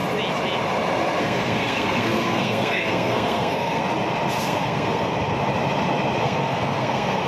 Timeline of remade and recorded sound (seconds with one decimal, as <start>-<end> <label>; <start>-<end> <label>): 0.0-1.2 recorded; 1.2-3.8 remade; 3.8-4.4 recorded; 4.4-5.1 remade; 5.1-6.2 recorded; 6.2-7.3 remade